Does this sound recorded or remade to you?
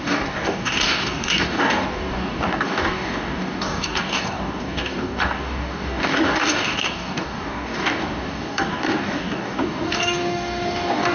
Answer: remade